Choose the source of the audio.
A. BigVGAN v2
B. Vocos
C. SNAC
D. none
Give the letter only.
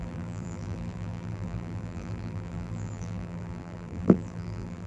A